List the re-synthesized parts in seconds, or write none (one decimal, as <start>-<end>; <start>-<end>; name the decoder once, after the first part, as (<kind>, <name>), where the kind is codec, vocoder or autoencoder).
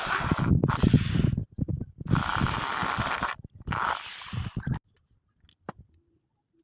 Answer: none